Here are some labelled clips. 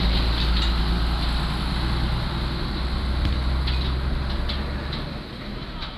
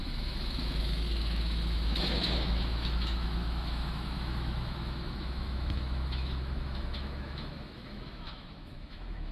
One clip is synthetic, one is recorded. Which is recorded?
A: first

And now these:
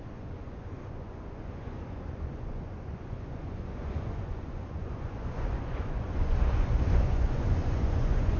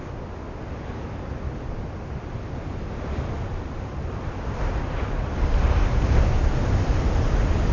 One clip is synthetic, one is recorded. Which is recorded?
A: second